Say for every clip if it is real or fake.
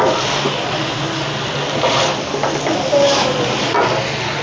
real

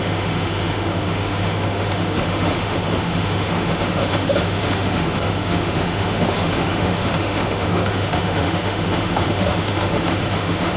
fake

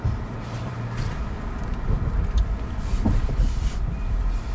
real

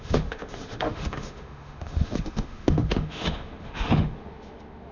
fake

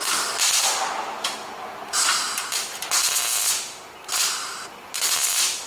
real